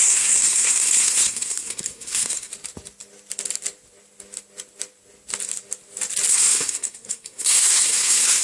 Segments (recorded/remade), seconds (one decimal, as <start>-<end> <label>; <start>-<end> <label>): 0.0-2.5 remade; 2.5-6.3 recorded; 6.3-8.4 remade